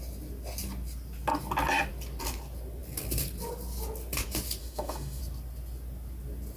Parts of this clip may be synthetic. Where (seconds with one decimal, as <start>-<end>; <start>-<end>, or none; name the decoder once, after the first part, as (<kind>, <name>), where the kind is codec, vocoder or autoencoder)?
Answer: 4.6-5.2 (autoencoder, DAC-VAE)